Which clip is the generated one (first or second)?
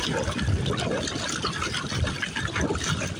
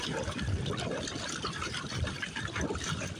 second